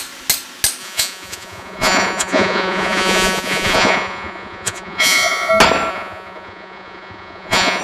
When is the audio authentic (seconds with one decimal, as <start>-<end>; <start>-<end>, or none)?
0.0-0.8; 5.5-5.9